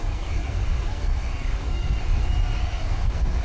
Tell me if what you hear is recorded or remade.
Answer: remade